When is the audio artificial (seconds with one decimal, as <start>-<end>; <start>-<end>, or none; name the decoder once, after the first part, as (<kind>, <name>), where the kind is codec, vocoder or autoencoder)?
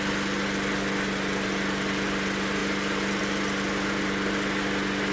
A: none